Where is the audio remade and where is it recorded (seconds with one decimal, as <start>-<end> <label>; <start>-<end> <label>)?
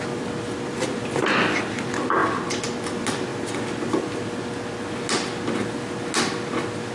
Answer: 0.0-6.9 recorded